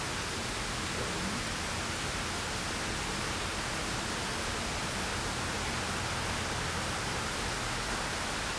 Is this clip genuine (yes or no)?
yes